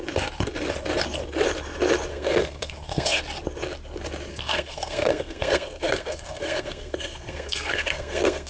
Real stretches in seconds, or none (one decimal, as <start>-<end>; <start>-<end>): 0.0-2.1; 3.2-4.3